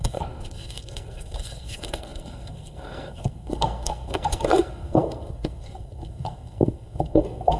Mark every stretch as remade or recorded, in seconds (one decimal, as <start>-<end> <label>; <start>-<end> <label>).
0.0-7.6 remade